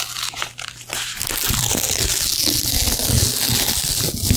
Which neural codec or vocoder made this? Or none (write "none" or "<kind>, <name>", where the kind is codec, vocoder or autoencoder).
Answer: none